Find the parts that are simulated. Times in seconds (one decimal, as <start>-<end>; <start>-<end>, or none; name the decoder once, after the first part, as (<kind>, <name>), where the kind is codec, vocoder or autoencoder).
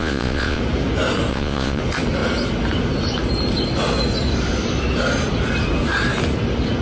0.0-0.6 (vocoder, Vocos); 1.3-1.8